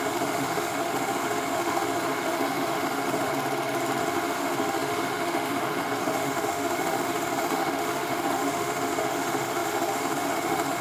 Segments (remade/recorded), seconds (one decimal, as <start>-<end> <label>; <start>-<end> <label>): 0.0-3.3 remade; 3.3-4.0 recorded; 4.0-10.8 remade